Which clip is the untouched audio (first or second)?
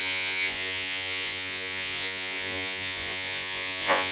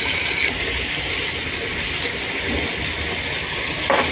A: second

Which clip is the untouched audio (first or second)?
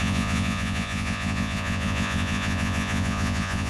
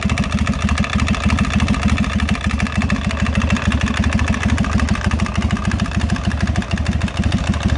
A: second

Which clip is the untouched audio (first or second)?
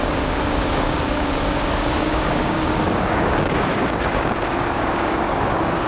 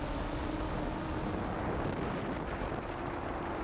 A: second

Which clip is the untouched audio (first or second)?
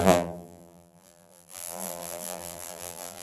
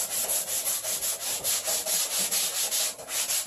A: second